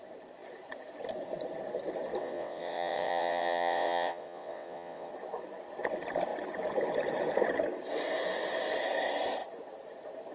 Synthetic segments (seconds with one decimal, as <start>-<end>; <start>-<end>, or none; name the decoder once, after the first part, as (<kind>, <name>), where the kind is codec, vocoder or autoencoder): 2.2-5.1 (vocoder, WaveNeXt)